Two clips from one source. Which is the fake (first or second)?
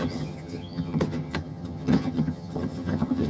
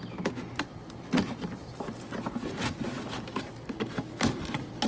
first